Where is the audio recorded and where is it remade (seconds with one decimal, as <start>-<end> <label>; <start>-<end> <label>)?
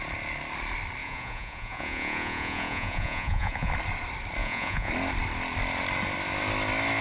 0.0-1.0 recorded; 1.0-3.7 remade; 3.7-4.4 recorded; 4.4-4.9 remade; 4.9-7.0 recorded